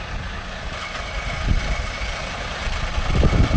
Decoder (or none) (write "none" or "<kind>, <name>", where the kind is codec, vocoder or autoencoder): none